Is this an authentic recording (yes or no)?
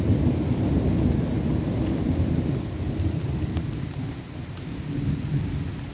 yes